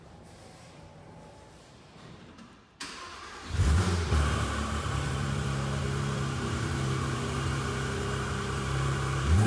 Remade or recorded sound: remade